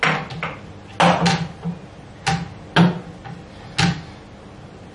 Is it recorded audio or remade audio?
recorded